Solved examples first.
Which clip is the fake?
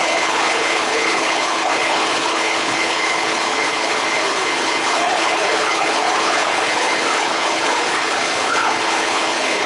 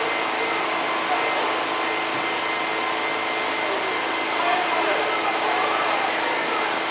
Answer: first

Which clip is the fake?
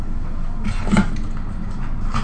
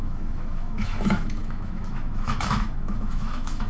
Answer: second